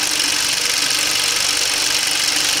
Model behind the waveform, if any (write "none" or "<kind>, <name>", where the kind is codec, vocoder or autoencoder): none